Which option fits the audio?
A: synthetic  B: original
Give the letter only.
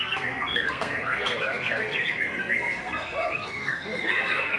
A